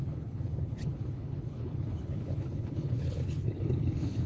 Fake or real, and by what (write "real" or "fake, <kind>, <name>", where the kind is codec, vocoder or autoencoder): fake, codec, HILCodec